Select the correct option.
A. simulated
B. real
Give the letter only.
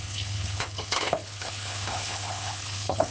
A